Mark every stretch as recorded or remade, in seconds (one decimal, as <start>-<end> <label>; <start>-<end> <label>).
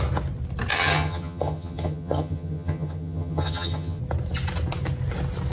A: 0.0-0.7 recorded; 0.7-4.0 remade; 4.0-5.5 recorded